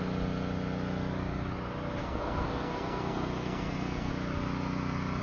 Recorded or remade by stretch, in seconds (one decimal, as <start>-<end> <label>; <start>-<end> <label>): 0.0-2.0 recorded; 2.0-4.1 remade; 4.1-5.2 recorded